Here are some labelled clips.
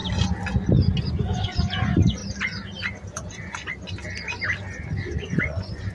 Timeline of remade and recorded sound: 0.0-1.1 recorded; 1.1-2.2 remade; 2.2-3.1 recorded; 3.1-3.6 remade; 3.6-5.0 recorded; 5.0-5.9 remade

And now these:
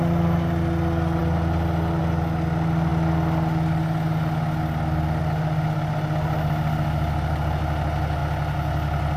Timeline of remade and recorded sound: 0.0-9.2 recorded

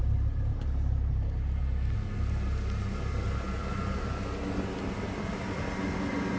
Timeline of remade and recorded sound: 0.0-6.4 recorded

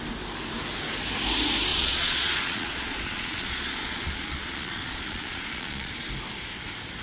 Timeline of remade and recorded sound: 0.0-1.7 recorded; 1.7-5.9 remade; 5.9-7.0 recorded

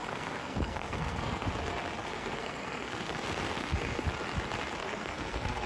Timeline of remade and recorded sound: 0.0-1.5 remade; 1.5-2.0 recorded; 2.0-4.0 remade; 4.0-4.8 recorded; 4.8-5.7 remade

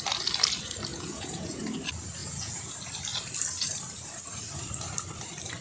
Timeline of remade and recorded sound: 0.0-0.9 recorded; 0.9-1.6 remade; 1.6-2.2 recorded; 2.2-2.7 remade; 2.7-5.6 recorded

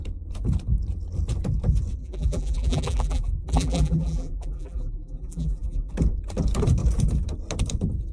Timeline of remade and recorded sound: 0.0-2.0 recorded; 2.0-5.9 remade; 5.9-8.1 recorded

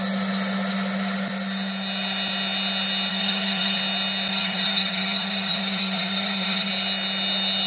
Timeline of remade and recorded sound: 0.0-3.1 recorded; 3.1-3.8 remade; 3.8-4.3 recorded; 4.3-6.7 remade; 6.7-7.7 recorded